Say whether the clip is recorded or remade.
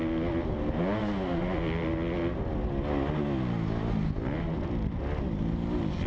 recorded